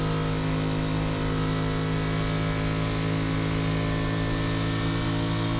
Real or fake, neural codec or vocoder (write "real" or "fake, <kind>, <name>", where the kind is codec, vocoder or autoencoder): real